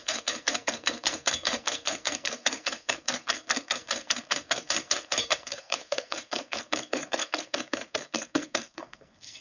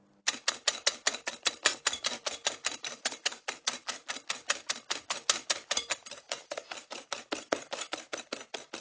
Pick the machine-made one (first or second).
first